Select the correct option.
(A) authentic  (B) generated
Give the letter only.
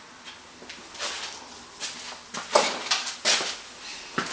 A